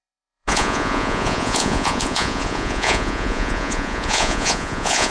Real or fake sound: fake